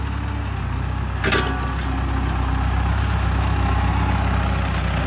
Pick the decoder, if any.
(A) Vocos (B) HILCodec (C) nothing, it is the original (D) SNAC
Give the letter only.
C